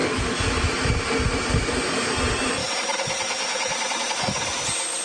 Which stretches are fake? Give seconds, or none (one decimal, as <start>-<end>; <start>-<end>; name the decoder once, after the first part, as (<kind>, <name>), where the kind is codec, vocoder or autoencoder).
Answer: none

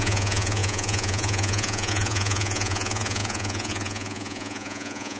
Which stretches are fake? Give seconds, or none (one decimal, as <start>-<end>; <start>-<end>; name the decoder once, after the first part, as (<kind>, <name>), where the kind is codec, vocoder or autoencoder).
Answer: 0.0-5.2 (vocoder, Vocos)

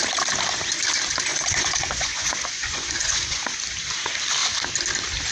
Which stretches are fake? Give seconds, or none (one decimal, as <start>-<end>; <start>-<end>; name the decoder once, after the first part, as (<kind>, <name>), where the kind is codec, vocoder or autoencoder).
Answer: 1.3-3.4 (vocoder, Vocos)

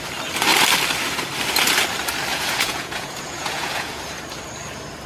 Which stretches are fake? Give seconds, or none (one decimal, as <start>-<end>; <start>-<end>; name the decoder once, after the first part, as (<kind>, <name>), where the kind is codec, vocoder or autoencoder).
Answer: 2.3-4.0 (vocoder, Vocos)

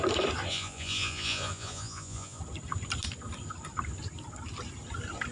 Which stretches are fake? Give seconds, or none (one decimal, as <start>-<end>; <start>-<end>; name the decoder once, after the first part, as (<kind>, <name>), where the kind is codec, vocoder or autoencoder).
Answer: 0.5-2.4 (vocoder, Vocos)

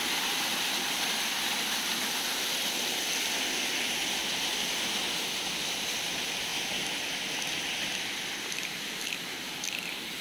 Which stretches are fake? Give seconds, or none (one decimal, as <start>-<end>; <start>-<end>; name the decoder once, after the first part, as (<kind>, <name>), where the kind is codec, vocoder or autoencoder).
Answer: none

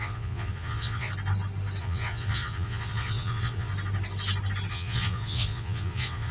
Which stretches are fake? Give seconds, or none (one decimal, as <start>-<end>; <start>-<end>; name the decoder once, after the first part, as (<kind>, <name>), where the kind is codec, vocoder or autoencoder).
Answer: 0.0-1.1 (vocoder, Vocos); 1.8-3.7; 4.7-6.3

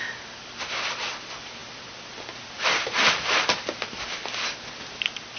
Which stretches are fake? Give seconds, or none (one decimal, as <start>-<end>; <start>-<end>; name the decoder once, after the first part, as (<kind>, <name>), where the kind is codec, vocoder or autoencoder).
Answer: none